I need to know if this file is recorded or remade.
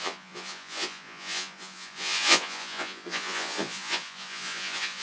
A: remade